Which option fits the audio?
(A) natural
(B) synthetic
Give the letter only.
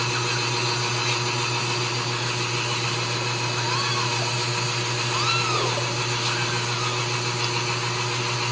A